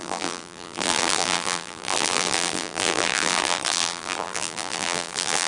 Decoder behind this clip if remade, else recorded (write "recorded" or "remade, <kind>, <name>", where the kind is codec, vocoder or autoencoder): remade, vocoder, BigVGAN v2